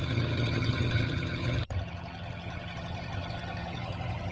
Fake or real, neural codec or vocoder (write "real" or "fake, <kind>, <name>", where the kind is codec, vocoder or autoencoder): fake, vocoder, HiFi-GAN